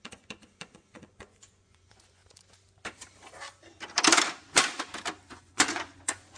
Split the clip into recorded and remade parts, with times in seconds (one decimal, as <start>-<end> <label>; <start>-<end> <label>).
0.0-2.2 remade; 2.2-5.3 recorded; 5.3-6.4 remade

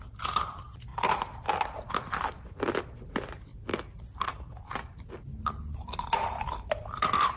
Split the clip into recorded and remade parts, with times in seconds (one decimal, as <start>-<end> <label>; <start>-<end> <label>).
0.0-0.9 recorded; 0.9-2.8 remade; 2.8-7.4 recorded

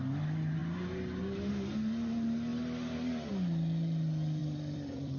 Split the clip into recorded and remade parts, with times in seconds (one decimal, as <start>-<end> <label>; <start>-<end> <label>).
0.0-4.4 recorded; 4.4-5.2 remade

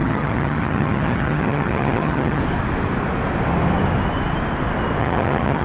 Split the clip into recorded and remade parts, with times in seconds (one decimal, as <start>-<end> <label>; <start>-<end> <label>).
0.0-2.4 remade; 2.4-5.0 recorded; 5.0-5.6 remade

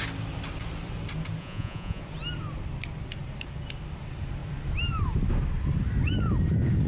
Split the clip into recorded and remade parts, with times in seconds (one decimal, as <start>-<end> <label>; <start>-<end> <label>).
0.0-1.4 recorded; 1.4-2.0 remade; 2.0-6.9 recorded

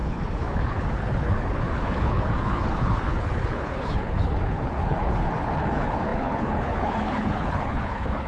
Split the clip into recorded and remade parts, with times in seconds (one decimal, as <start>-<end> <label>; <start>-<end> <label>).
0.0-8.3 remade

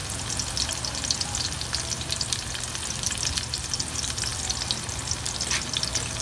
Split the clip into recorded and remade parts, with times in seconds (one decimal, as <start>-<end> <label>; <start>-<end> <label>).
0.0-6.2 recorded